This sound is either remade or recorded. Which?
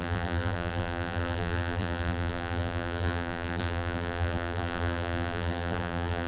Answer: remade